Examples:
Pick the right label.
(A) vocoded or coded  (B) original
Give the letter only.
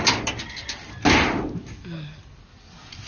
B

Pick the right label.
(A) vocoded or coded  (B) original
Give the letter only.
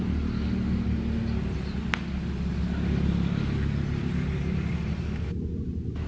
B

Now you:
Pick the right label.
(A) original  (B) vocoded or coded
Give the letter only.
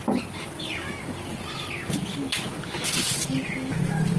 A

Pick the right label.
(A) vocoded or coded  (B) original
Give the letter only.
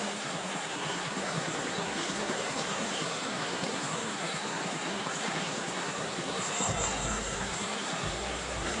A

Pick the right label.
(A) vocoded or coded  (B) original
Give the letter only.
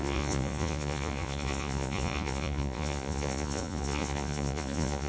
A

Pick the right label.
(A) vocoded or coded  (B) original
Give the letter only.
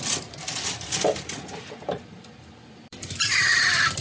A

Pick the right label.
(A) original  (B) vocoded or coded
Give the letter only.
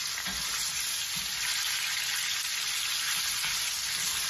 A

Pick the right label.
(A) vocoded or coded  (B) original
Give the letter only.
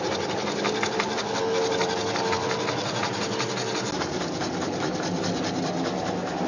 B